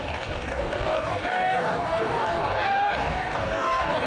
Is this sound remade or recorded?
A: remade